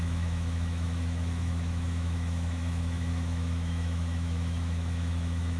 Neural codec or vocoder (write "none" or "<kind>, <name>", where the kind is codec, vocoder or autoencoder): autoencoder, DAC-VAE